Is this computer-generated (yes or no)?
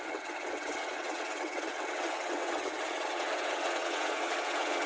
yes